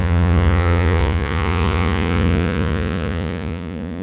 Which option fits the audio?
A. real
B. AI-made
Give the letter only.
B